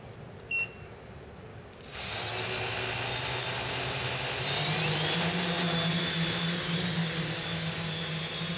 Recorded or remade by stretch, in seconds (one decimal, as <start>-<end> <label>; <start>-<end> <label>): 0.0-1.5 recorded; 1.5-2.2 remade; 2.2-7.0 recorded; 7.0-7.7 remade; 7.7-8.6 recorded